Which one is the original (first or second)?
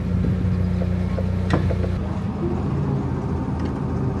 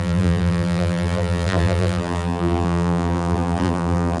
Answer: first